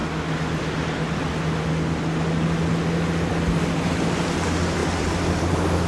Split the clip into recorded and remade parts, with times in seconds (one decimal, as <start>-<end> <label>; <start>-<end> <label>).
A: 0.0-4.8 recorded; 4.8-5.5 remade; 5.5-5.9 recorded